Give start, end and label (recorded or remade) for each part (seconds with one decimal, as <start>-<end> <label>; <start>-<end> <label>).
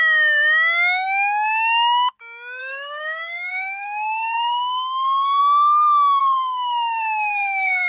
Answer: 0.0-2.6 recorded; 2.6-5.4 remade; 5.4-6.2 recorded; 6.2-7.9 remade